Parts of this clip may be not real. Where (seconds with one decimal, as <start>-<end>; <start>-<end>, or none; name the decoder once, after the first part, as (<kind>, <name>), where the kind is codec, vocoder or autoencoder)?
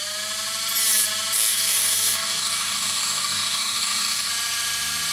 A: 1.5-4.3 (codec, DAC)